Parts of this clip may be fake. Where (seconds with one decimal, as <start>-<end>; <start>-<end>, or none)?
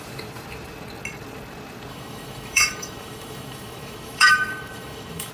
1.9-5.3